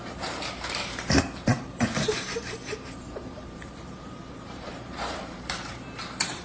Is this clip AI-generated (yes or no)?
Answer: yes